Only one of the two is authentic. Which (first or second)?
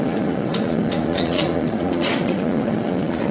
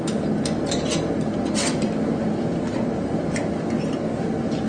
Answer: second